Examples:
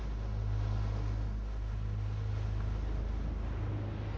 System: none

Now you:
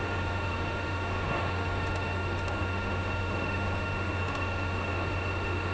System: autoencoder, DAC-VAE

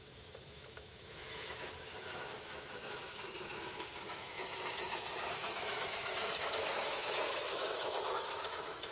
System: autoencoder, DAC-VAE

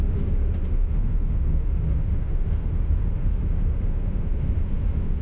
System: autoencoder, DAC-VAE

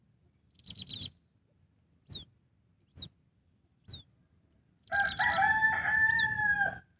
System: none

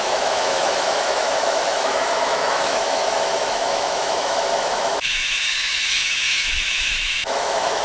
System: autoencoder, DAC-VAE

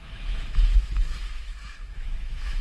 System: autoencoder, DAC-VAE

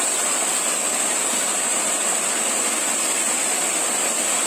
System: none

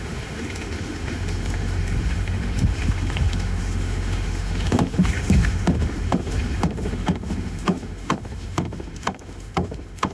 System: autoencoder, DAC-VAE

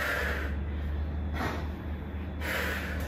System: none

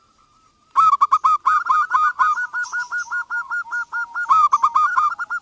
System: none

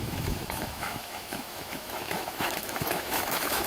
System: autoencoder, DAC-VAE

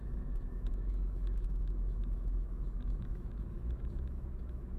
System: autoencoder, DAC-VAE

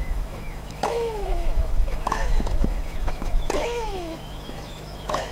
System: autoencoder, DAC-VAE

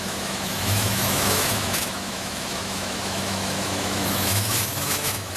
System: autoencoder, DAC-VAE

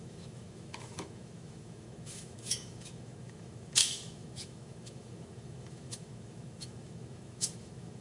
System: autoencoder, DAC-VAE